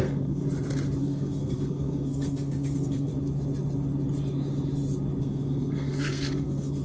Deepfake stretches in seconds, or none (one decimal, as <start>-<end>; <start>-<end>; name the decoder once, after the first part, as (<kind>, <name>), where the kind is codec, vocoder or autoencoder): 0.0-0.4 (codec, SNAC); 1.0-3.1; 5.2-6.8